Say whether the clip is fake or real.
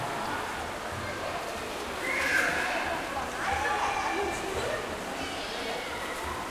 real